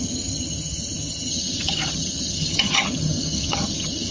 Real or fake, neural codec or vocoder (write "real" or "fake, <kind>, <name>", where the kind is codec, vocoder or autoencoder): fake, vocoder, HiFi-GAN